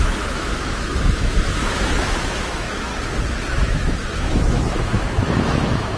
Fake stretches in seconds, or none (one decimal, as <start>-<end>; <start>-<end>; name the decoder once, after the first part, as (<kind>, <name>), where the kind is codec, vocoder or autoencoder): 0.0-2.9 (autoencoder, DAC-VAE); 3.5-6.0

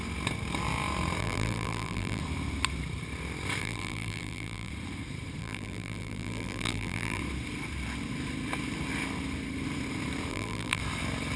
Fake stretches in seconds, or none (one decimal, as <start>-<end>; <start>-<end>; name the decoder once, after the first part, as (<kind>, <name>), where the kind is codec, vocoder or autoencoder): 1.2-2.2 (vocoder, BigVGAN v2); 3.6-4.7; 5.4-7.2; 10.3-10.8

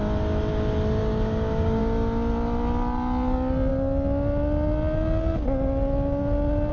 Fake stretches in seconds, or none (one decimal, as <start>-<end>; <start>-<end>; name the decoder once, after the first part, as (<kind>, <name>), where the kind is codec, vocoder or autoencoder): 1.0-1.8 (codec, DAC)

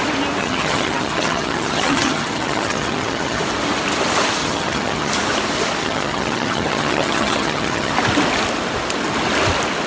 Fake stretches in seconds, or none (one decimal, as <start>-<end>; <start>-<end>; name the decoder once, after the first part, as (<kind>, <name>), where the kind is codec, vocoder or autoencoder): 0.4-3.4 (vocoder, HiFi-GAN); 4.4-5.1; 5.8-7.9

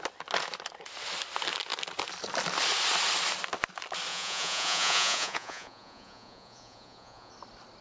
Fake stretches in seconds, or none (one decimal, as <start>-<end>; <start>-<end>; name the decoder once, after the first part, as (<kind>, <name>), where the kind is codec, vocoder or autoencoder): 4.1-7.3 (vocoder, Vocos)

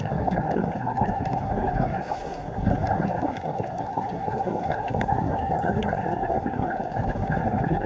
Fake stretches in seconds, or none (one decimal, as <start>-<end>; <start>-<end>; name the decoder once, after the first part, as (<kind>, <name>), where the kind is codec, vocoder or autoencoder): 0.0-7.9 (codec, SNAC)